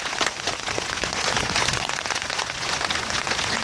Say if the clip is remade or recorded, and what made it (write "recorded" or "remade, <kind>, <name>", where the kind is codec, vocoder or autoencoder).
remade, vocoder, Vocos